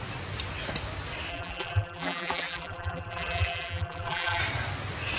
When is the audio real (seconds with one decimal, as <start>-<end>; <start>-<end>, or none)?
0.0-1.3; 4.4-5.2